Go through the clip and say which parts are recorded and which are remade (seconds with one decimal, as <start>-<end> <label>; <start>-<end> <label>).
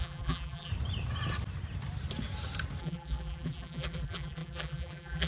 0.0-0.7 remade; 0.7-2.8 recorded; 2.8-5.3 remade